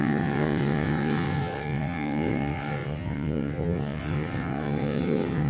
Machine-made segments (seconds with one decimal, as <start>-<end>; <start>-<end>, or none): 0.0-5.5